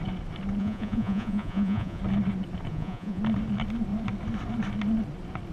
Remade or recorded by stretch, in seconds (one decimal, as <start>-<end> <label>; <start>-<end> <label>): 0.0-0.6 recorded; 0.6-2.0 remade; 2.0-2.7 recorded; 2.7-3.2 remade; 3.2-5.5 recorded